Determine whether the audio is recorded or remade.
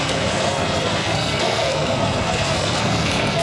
remade